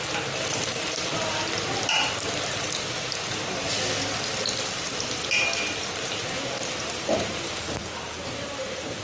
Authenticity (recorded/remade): recorded